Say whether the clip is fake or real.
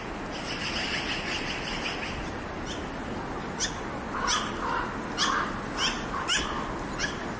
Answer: real